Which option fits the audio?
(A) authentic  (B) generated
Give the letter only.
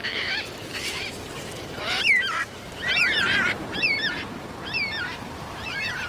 B